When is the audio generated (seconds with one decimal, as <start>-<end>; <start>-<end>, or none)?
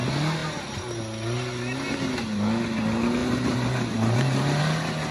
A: 3.2-4.6